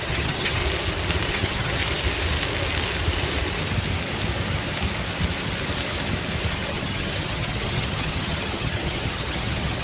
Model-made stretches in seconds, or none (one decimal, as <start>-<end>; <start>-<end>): 0.0-0.6; 1.3-1.8; 6.5-9.8